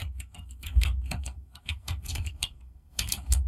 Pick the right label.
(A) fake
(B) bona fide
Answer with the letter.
A